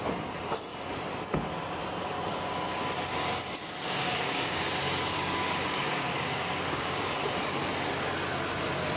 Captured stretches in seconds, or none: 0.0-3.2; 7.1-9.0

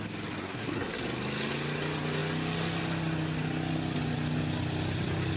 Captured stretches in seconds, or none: 0.0-0.4; 1.0-5.4

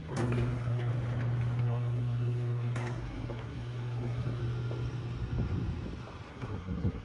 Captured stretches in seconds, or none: 0.9-1.6; 4.4-6.3

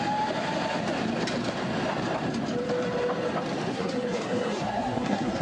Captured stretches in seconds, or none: 0.0-3.7

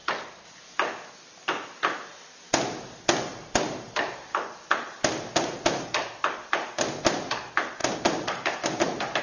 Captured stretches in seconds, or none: 0.0-9.2